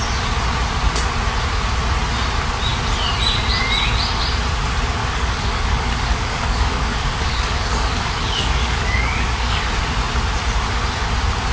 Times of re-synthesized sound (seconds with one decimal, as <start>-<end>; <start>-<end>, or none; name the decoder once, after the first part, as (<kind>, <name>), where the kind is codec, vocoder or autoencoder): 5.0-9.6 (codec, DAC)